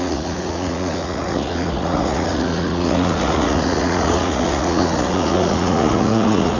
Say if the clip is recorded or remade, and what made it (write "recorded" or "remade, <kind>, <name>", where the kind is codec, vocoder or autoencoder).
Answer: remade, vocoder, Vocos